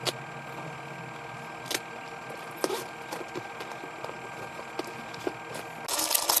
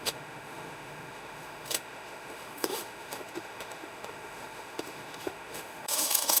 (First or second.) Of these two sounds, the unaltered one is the first